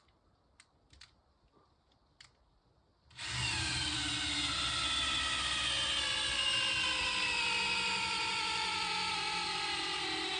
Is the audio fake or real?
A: real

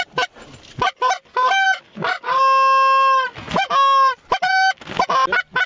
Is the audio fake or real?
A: real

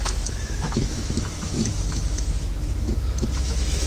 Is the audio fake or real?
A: fake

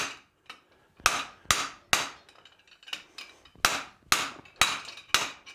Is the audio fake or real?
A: real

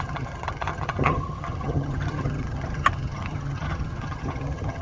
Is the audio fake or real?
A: fake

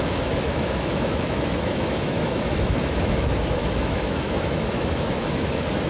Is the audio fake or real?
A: fake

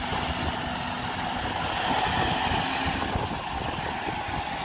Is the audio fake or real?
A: real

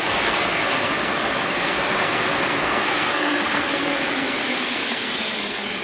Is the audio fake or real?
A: fake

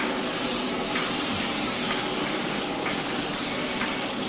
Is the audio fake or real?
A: real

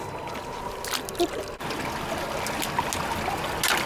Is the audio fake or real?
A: real